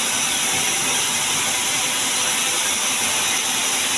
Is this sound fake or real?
real